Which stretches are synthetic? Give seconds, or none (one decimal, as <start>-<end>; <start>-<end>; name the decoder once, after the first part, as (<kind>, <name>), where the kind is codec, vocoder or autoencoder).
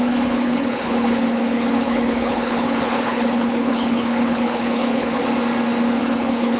0.0-5.2 (codec, HILCodec); 6.0-6.6